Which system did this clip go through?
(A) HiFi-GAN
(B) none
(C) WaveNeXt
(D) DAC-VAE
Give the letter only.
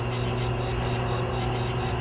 B